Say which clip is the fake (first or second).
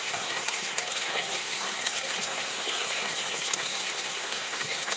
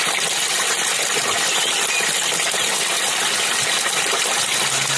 first